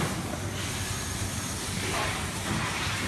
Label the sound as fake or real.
real